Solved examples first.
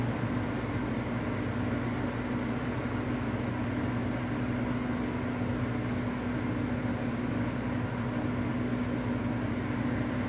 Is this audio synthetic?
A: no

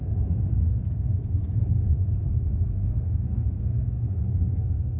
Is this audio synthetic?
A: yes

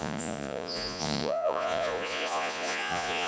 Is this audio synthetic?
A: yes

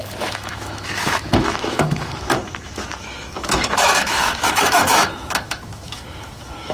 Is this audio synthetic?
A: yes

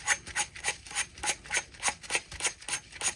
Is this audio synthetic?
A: no